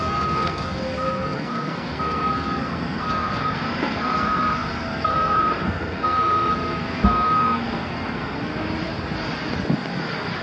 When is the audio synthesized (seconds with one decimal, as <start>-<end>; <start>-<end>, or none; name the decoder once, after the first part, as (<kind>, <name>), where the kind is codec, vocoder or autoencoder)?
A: 0.0-8.5 (codec, SNAC)